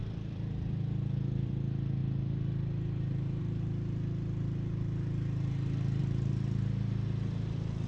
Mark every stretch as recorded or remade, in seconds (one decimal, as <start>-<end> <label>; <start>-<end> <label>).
0.0-1.5 remade; 1.5-6.0 recorded; 6.0-7.9 remade